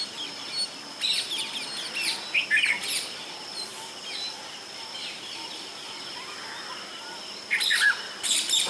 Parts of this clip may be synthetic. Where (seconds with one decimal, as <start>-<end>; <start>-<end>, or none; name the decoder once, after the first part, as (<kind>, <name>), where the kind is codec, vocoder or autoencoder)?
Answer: 3.7-6.7 (vocoder, BigVGAN v2)